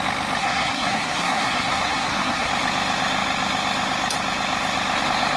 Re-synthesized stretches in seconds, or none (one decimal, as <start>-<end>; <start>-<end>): 0.4-2.5